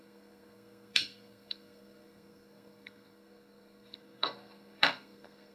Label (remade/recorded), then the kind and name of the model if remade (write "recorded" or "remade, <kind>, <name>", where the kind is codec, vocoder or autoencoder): remade, codec, SNAC